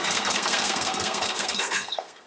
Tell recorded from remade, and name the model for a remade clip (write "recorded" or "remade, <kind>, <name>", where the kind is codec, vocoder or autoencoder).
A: remade, codec, SNAC